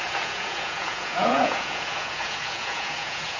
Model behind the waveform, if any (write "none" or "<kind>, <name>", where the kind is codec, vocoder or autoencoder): vocoder, Vocos